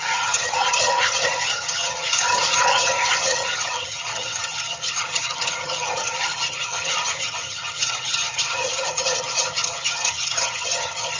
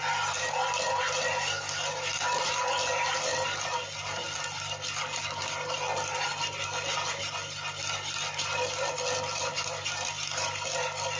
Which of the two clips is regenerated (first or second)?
first